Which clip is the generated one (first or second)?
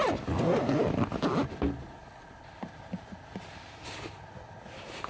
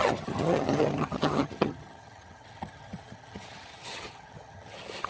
second